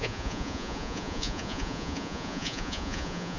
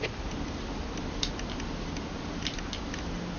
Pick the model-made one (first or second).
first